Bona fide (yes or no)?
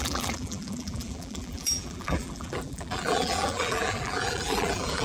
no